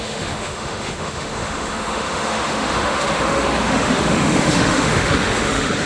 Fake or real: fake